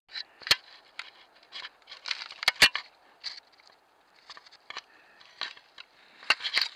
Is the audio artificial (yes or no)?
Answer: no